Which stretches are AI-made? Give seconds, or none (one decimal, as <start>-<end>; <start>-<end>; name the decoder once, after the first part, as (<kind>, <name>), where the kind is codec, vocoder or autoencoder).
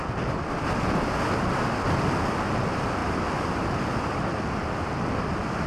none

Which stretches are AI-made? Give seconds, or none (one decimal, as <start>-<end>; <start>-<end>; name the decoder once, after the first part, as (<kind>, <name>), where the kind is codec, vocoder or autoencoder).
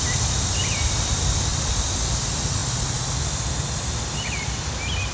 none